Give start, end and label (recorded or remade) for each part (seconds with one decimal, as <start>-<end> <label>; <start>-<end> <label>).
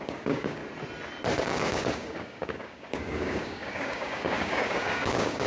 0.0-0.6 remade; 0.6-1.4 recorded; 1.4-5.5 remade